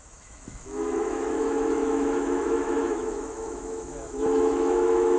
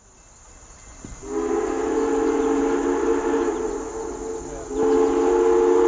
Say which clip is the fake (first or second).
first